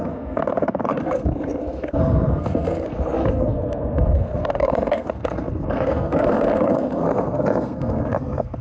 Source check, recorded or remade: remade